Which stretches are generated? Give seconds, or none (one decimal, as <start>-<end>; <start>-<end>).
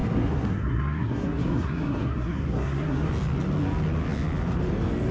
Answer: 0.0-3.1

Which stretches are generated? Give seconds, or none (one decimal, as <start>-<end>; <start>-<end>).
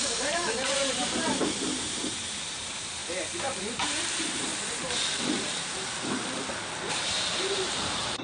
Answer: 0.0-3.0; 3.6-4.5; 6.9-8.2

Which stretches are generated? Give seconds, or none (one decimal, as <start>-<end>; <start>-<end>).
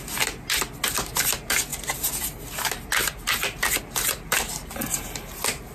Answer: none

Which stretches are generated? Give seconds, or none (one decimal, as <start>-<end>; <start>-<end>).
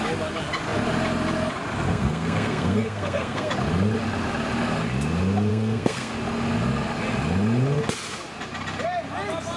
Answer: 1.9-3.5; 5.5-6.1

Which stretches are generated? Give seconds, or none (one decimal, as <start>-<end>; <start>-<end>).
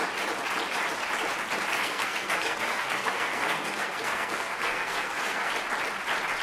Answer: 1.7-5.5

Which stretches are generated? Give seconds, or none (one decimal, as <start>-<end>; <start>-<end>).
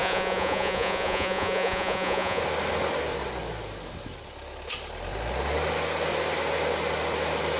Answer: 0.0-2.4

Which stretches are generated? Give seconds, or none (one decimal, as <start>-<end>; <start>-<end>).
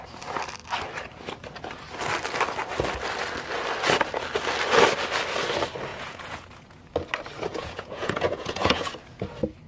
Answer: 5.9-6.8; 7.5-8.9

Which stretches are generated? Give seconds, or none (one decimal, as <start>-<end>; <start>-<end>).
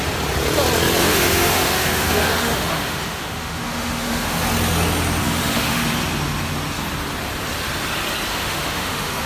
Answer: 1.0-4.4; 5.2-5.8; 8.3-9.3